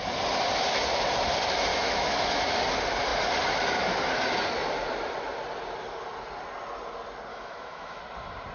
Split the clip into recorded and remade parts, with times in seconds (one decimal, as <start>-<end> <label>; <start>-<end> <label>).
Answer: 0.0-1.7 recorded; 1.7-2.4 remade; 2.4-7.3 recorded; 7.3-8.0 remade; 8.0-8.5 recorded